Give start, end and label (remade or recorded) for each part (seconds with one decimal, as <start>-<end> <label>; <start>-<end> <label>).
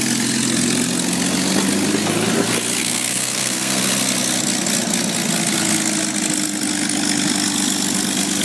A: 0.0-2.8 recorded; 2.8-3.8 remade; 3.8-8.4 recorded